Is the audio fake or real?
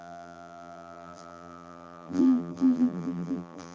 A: fake